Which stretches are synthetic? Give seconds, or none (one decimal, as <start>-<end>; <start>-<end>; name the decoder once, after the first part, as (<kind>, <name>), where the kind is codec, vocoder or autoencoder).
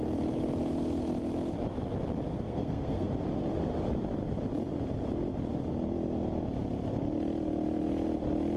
2.3-3.1 (codec, SNAC)